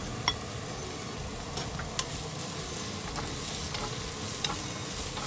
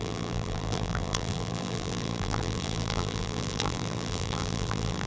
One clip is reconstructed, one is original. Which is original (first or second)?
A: first